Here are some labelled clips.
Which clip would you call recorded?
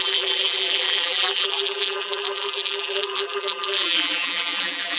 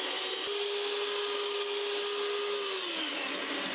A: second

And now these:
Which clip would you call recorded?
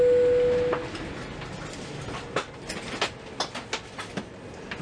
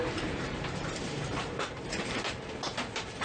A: first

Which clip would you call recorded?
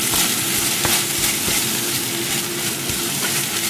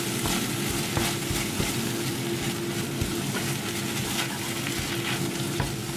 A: second